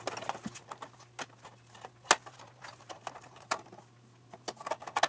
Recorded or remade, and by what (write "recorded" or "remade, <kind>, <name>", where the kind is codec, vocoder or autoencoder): recorded